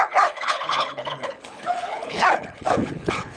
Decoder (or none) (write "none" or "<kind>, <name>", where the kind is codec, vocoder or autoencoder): codec, HILCodec